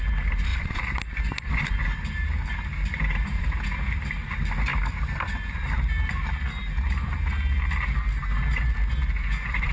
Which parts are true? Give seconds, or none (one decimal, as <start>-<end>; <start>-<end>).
0.0-9.7